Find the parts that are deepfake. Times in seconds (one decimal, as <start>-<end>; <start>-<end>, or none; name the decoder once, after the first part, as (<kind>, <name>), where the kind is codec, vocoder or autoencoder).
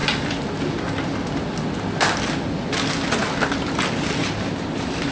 3.2-3.8 (vocoder, BigVGAN v2); 4.2-5.1